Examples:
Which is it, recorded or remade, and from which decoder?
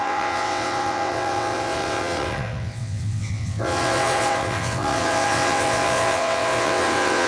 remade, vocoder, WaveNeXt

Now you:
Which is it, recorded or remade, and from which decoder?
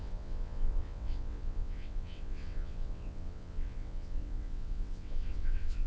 remade, vocoder, WaveNeXt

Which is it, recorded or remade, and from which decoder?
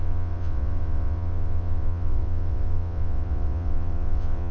remade, vocoder, WaveNeXt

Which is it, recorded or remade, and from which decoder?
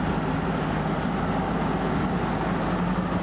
recorded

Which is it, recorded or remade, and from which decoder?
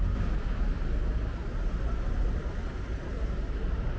recorded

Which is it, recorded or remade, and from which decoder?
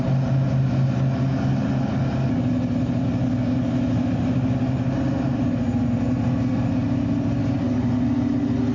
recorded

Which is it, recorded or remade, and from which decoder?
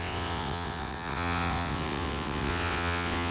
remade, vocoder, WaveNeXt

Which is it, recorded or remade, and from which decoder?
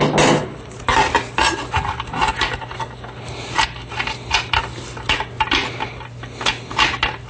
recorded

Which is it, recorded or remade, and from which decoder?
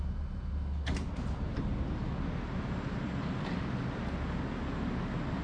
recorded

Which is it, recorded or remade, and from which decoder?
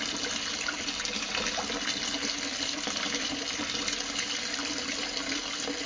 recorded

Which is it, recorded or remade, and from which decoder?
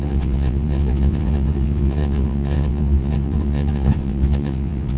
remade, vocoder, WaveNeXt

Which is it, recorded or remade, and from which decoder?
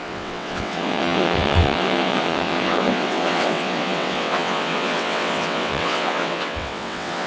remade, vocoder, WaveNeXt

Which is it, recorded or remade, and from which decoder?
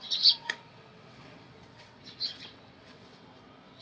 remade, vocoder, WaveNeXt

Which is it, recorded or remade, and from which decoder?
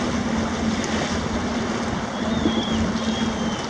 recorded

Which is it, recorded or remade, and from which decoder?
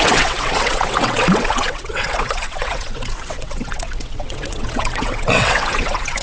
remade, vocoder, WaveNeXt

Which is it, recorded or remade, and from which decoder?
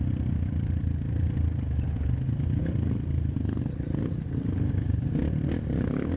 recorded